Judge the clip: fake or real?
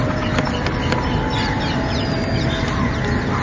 real